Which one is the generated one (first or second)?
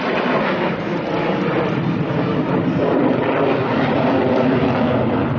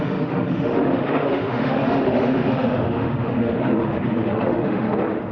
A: second